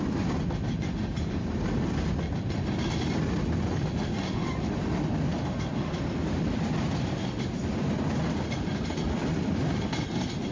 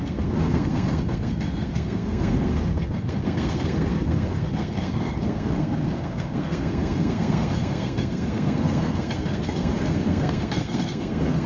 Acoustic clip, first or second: first